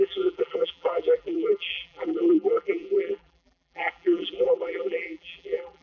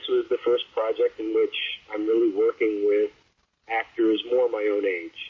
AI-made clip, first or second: first